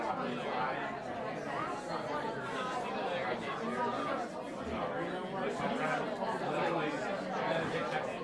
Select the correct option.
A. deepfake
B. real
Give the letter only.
B